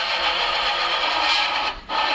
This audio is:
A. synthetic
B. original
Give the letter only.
B